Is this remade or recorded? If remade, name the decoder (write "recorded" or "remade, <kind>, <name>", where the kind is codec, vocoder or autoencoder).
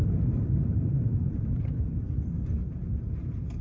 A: remade, vocoder, BigVGAN v2